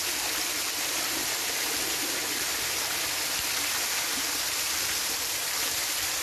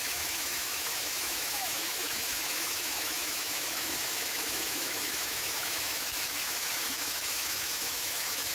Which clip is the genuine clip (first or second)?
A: first